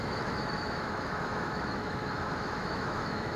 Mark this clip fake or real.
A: fake